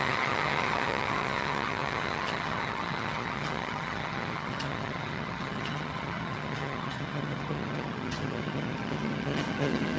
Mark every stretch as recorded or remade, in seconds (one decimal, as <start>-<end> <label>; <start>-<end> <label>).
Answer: 0.0-10.0 remade